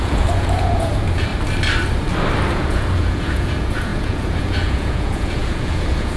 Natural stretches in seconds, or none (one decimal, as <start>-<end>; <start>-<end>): 1.3-2.5